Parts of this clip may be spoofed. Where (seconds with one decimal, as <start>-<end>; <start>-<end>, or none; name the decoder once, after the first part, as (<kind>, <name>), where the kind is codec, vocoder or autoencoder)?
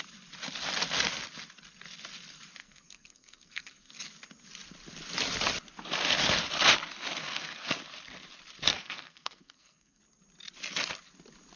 2.6-3.9 (codec, SNAC); 7.2-7.8; 8.7-10.0